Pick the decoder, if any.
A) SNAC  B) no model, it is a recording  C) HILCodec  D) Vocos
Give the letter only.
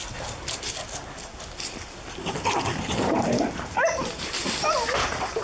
B